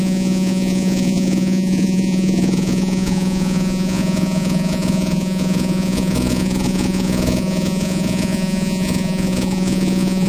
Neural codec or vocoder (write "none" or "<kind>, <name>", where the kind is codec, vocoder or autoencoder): vocoder, Vocos